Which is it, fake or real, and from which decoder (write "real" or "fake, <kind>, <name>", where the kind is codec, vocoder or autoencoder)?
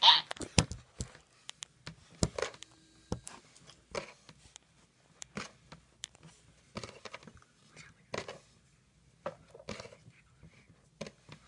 real